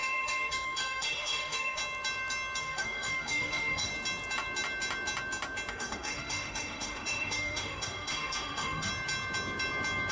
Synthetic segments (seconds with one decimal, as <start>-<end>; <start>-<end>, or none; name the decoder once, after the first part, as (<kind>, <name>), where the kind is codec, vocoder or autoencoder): 0.0-1.8 (autoencoder, DAC-VAE); 2.6-3.9; 5.7-8.9